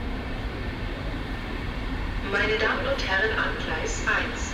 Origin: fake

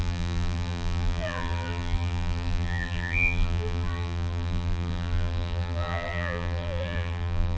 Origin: fake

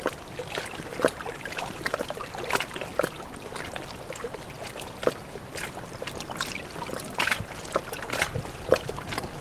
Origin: fake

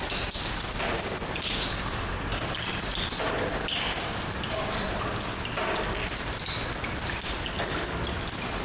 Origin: real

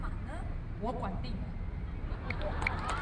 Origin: real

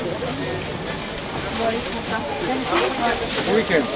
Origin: real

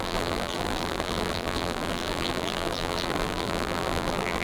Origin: fake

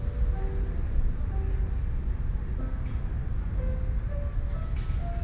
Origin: real